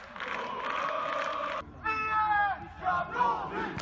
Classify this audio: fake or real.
real